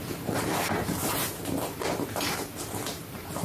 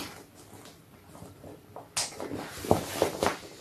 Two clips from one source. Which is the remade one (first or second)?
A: first